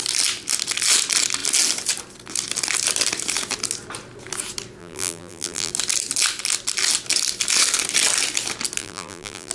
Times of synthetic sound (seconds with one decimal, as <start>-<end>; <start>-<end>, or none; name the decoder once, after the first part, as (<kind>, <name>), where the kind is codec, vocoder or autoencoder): 4.8-5.7 (vocoder, BigVGAN v2); 8.8-9.5